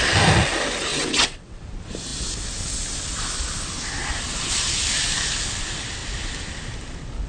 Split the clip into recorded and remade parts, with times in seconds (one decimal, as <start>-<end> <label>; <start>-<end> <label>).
0.0-0.9 recorded; 0.9-1.6 remade; 1.6-7.3 recorded